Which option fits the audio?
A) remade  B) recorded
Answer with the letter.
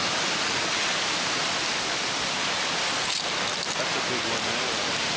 B